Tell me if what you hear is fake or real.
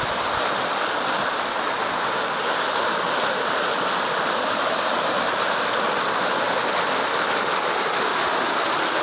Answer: real